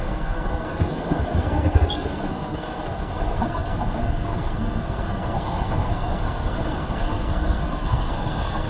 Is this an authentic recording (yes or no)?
no